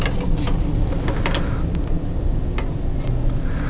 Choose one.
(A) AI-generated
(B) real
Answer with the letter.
B